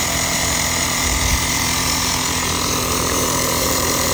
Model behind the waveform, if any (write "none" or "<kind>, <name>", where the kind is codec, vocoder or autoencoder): vocoder, BigVGAN v2